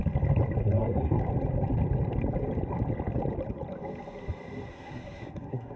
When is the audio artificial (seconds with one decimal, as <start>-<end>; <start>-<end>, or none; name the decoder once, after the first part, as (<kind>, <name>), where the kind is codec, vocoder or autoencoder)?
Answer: 0.6-1.2 (codec, SNAC); 4.7-5.8